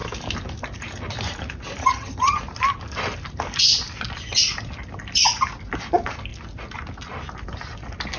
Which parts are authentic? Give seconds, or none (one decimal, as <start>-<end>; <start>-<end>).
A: 0.0-1.8; 2.4-8.2